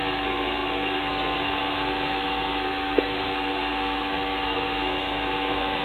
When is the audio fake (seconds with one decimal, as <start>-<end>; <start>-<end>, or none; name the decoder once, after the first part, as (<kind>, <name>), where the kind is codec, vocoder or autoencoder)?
0.0-5.8 (codec, SNAC)